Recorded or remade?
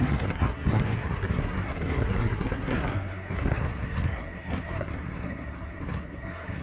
remade